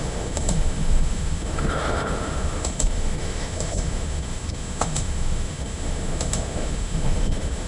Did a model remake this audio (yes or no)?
yes